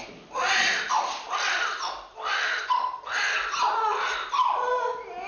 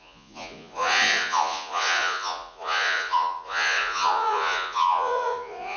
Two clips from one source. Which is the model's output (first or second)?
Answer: second